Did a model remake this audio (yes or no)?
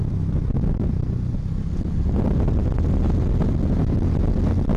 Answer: no